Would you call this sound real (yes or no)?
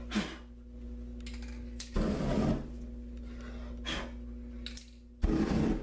yes